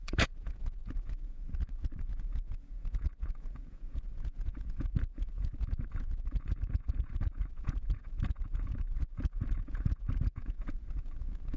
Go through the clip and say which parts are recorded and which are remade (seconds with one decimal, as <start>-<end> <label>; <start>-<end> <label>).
0.0-11.6 remade